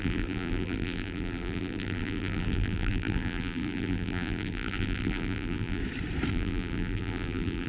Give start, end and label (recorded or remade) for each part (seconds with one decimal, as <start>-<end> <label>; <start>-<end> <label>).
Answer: 0.0-5.8 remade; 5.8-6.3 recorded; 6.3-7.7 remade